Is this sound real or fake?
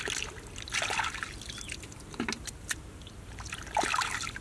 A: real